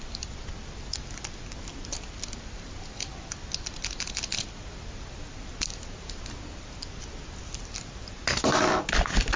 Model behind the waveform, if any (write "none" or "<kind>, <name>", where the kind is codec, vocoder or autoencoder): none